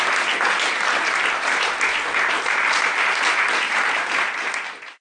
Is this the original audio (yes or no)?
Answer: yes